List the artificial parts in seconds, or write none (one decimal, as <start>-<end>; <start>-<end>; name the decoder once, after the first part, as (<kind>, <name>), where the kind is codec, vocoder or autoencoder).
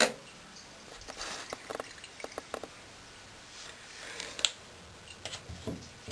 none